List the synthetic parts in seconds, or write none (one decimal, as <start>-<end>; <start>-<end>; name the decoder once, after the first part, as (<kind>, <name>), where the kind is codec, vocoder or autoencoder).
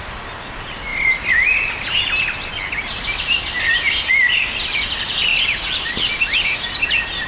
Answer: none